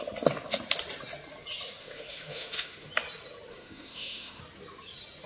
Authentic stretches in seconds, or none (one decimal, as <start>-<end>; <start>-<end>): 0.0-1.8; 2.9-3.5; 4.4-5.3